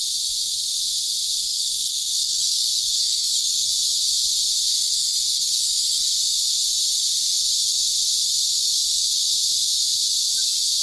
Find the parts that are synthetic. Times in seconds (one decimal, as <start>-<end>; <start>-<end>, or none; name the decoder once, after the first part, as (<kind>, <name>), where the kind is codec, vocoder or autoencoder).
1.4-3.7 (codec, SNAC); 4.8-6.1